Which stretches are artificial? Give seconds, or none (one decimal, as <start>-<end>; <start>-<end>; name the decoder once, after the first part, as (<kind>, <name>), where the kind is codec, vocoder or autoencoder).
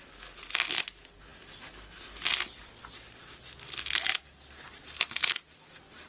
none